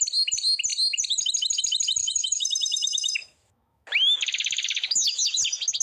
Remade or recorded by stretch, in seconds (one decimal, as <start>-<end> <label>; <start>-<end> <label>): 0.0-2.0 recorded; 2.0-5.3 remade; 5.3-5.8 recorded